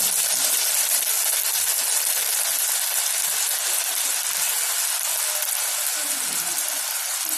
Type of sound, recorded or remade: recorded